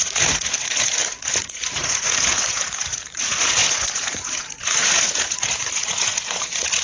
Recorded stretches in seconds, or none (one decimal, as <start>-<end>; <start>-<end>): none